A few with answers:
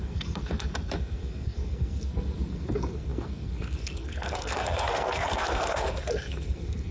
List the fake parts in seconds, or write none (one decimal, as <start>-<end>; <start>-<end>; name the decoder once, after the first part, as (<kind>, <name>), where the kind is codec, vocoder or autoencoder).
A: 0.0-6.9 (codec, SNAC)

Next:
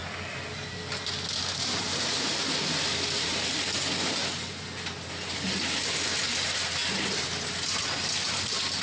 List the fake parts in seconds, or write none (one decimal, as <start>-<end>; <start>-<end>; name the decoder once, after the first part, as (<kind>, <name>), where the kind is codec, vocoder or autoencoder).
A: none

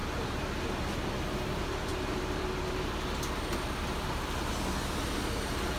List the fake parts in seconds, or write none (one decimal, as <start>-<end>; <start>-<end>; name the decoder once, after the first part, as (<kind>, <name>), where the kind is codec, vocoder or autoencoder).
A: none

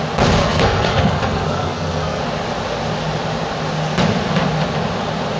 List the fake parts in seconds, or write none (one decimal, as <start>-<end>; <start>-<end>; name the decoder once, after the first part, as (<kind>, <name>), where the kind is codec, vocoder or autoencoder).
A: 0.4-2.2 (codec, SNAC)